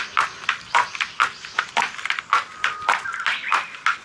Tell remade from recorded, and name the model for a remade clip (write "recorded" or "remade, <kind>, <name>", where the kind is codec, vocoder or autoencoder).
recorded